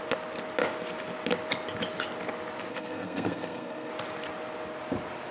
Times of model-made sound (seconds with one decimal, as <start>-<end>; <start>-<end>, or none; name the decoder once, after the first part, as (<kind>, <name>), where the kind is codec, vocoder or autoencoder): 2.7-3.9 (codec, SNAC)